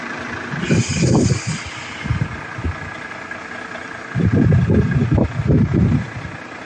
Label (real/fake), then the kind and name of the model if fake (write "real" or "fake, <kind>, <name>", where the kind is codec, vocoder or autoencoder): real